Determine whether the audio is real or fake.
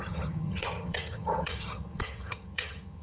fake